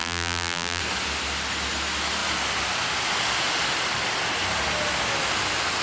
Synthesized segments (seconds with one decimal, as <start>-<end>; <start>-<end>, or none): 0.0-0.8